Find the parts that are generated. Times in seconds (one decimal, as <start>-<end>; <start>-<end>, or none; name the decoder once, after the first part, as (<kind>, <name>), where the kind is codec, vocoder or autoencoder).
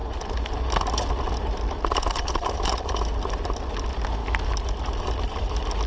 none